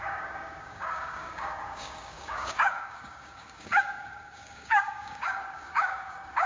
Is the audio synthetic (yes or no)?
yes